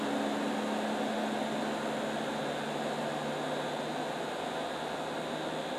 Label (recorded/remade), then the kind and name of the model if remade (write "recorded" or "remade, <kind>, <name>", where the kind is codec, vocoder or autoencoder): recorded